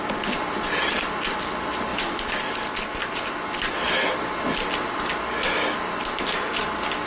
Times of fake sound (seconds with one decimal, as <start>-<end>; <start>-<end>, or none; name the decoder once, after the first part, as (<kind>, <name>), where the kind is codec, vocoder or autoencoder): none